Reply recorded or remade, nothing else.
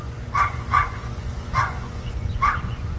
remade